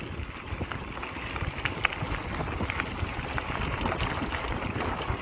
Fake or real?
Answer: real